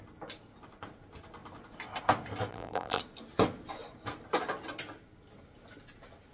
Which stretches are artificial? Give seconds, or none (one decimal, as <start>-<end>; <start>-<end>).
2.5-3.0